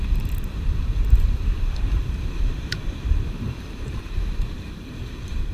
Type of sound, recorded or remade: remade